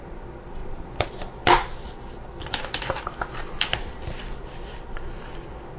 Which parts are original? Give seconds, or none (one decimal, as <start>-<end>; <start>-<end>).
0.0-5.8